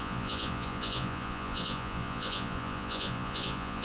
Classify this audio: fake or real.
fake